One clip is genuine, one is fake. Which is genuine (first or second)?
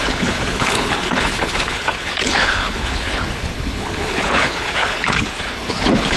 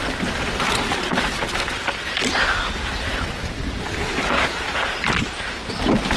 second